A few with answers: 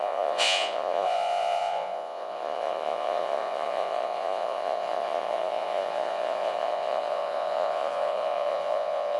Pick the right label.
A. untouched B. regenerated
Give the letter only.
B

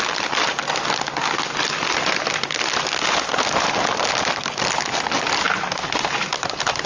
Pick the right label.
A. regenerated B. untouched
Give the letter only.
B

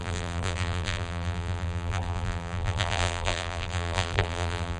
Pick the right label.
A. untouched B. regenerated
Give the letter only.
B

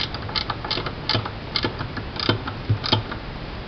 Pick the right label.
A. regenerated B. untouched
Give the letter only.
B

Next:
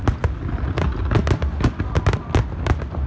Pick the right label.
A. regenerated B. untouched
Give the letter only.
B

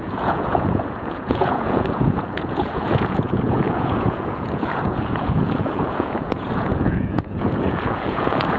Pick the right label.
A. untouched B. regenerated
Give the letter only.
B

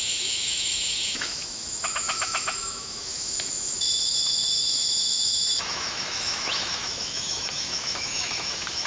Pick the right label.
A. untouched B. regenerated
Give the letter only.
B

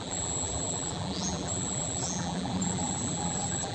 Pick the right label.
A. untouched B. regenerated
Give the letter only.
B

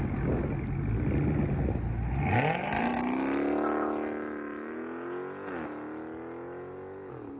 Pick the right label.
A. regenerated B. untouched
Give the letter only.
B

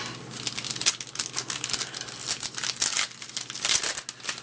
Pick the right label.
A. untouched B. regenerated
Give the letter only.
A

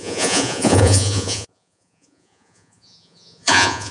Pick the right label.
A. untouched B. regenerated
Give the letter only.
B